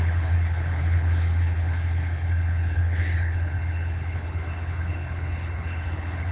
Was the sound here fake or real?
fake